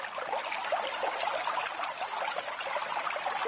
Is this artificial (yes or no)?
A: no